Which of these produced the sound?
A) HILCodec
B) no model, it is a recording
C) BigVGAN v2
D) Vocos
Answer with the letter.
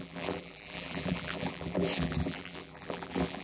C